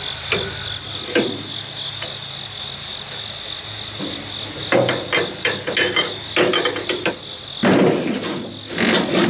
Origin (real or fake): real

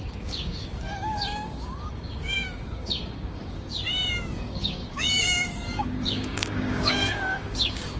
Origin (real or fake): fake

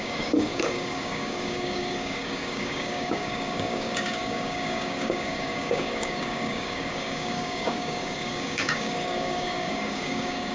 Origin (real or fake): fake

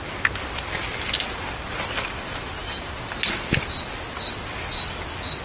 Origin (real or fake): real